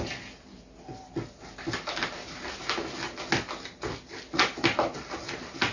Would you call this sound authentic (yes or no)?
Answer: yes